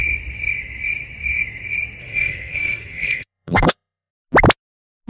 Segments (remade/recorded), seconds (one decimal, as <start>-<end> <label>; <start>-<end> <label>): 0.0-2.0 recorded; 2.0-4.1 remade; 4.1-5.1 recorded